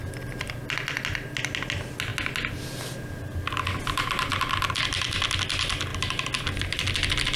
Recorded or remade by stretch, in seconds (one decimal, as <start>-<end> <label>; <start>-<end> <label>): 0.0-7.4 recorded